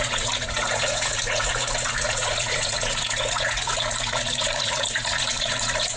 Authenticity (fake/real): fake